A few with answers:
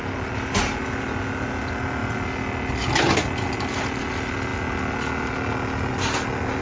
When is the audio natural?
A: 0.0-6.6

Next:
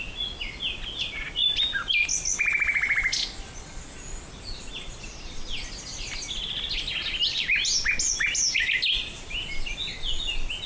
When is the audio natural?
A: 0.0-10.7